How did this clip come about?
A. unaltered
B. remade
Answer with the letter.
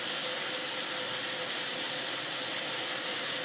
A